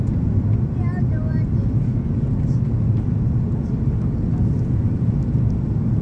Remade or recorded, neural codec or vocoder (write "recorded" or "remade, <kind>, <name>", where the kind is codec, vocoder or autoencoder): recorded